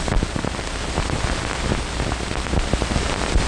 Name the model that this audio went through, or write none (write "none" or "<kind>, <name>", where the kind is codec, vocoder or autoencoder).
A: vocoder, BigVGAN v2